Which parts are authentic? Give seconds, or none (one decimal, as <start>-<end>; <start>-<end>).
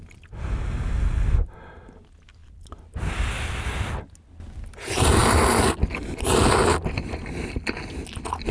0.0-8.5